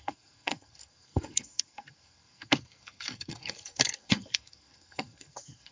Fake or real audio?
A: fake